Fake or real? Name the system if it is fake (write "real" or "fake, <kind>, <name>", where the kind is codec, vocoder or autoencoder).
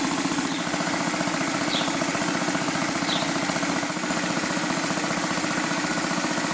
real